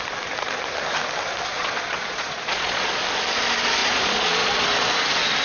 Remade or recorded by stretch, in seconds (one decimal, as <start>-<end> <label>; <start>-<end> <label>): 0.0-1.5 recorded; 1.5-3.0 remade; 3.0-3.8 recorded; 3.8-4.6 remade; 4.6-5.4 recorded